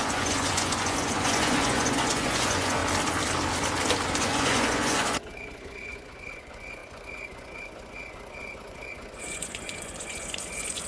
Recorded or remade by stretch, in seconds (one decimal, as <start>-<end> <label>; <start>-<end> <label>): 0.0-2.8 remade; 2.8-4.2 recorded; 4.2-10.9 remade

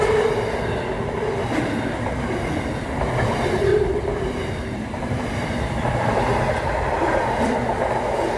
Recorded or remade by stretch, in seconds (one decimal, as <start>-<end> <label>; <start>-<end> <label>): 0.0-3.7 recorded; 3.7-5.7 remade; 5.7-8.4 recorded

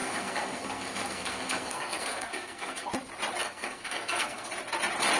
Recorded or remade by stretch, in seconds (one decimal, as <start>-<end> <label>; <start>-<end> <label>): 0.0-2.9 remade; 2.9-3.4 recorded; 3.4-4.5 remade; 4.5-5.2 recorded

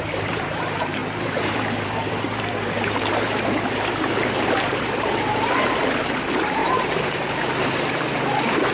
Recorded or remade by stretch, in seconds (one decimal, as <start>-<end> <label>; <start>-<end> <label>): 0.0-8.7 remade